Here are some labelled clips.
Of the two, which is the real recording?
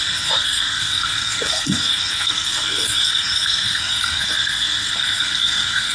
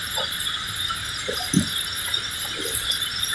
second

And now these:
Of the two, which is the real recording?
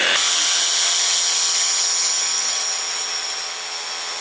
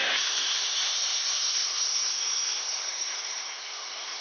first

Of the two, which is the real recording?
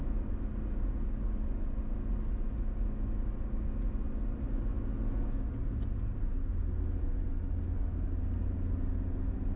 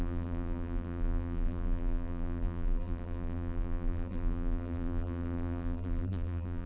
first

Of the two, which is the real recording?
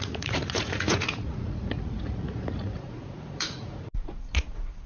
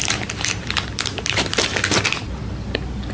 second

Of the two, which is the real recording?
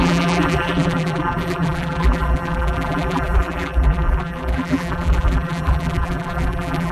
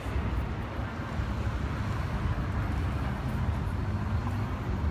second